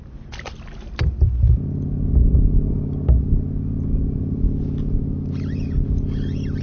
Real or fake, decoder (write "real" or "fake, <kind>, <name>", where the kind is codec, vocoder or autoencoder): real